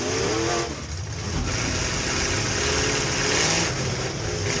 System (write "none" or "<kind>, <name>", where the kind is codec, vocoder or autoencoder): none